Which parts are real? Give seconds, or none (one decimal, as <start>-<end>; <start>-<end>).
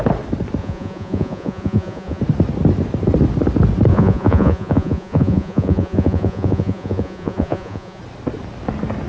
0.0-0.6; 2.2-3.9; 8.0-9.1